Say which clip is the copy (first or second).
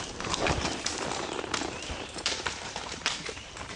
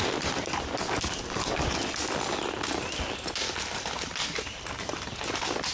first